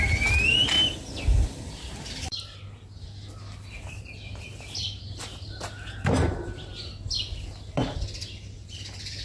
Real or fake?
real